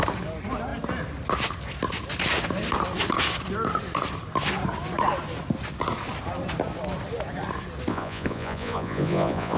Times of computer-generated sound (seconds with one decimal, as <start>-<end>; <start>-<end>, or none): 7.9-9.6